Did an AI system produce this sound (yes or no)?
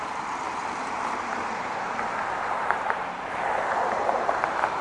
yes